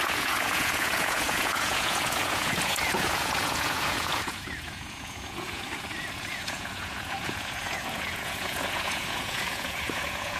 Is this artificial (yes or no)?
yes